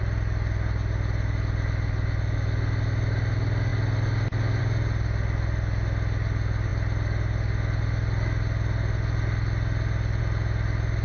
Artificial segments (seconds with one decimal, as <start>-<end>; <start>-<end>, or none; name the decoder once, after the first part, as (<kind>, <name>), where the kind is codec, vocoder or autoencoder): none